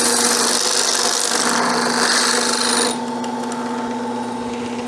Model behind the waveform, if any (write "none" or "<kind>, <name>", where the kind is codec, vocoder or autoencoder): none